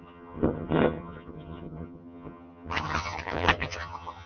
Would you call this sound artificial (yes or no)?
yes